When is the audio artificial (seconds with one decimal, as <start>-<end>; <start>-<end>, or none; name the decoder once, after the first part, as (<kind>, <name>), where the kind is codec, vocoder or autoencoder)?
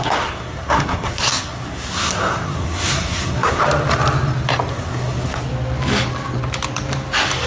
0.0-3.6 (codec, SNAC); 4.7-5.4